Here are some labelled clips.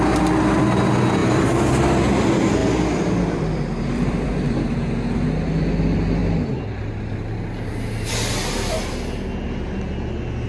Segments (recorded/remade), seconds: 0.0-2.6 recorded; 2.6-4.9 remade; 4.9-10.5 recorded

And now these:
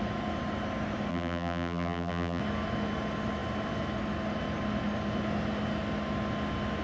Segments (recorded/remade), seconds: 0.0-1.1 recorded; 1.1-2.4 remade; 2.4-6.8 recorded

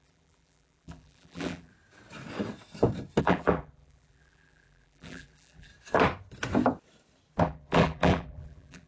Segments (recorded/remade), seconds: 0.0-1.7 remade; 1.7-3.2 recorded; 3.2-5.7 remade; 5.7-7.4 recorded; 7.4-8.9 remade

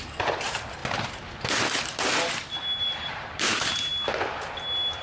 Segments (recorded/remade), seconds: 0.0-0.8 remade; 0.8-2.8 recorded; 2.8-3.9 remade; 3.9-5.0 recorded